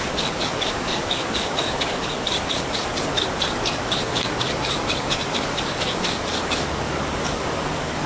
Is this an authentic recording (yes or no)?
no